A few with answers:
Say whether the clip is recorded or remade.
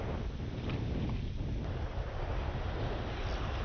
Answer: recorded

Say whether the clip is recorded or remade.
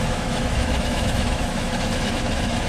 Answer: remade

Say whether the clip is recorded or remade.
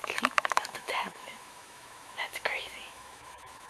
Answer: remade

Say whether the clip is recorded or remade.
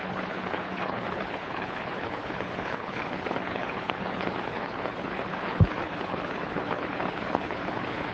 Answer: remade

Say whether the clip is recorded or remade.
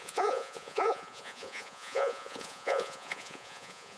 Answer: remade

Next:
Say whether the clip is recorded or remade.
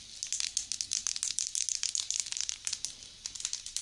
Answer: recorded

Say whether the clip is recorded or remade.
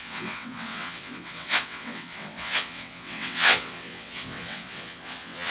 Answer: remade